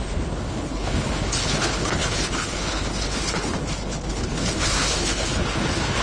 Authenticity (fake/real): fake